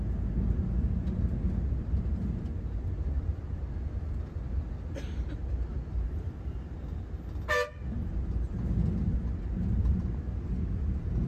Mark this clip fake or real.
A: real